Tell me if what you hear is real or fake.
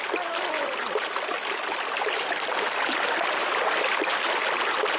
fake